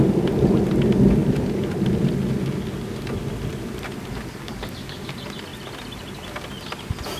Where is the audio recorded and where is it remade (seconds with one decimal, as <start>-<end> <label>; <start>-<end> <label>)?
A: 0.0-4.4 recorded; 4.4-5.1 remade; 5.1-7.2 recorded